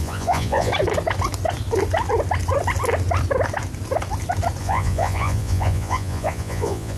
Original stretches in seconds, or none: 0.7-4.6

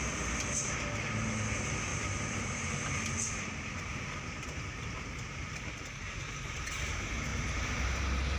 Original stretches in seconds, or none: 0.0-1.9; 5.6-6.0; 6.7-7.3; 7.9-8.4

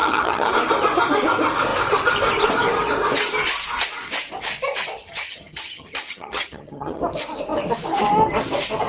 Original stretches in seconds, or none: 0.5-5.0; 7.0-8.9

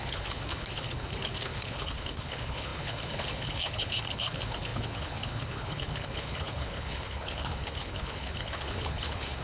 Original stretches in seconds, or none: none

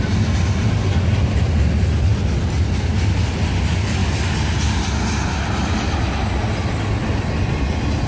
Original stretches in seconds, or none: 0.0-8.1

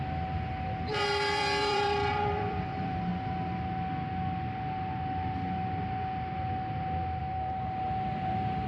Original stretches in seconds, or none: 3.1-7.2